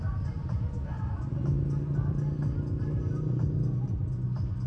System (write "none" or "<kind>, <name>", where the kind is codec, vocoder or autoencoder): none